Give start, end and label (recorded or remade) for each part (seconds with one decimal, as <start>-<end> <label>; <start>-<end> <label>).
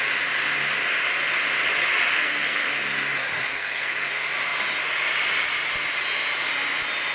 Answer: 0.0-2.1 recorded; 2.1-2.7 remade; 2.7-3.5 recorded; 3.5-4.1 remade; 4.1-7.1 recorded